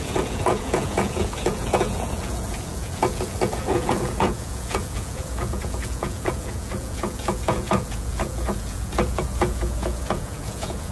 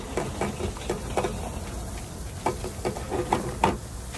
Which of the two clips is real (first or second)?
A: second